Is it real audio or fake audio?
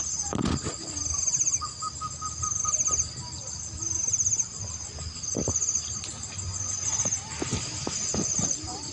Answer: real